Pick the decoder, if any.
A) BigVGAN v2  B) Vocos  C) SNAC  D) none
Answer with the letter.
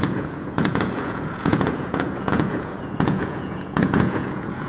B